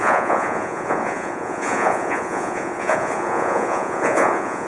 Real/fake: fake